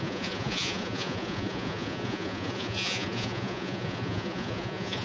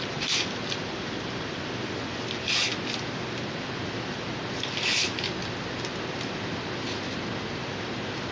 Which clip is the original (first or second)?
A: second